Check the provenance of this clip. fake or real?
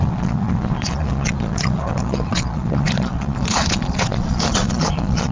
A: fake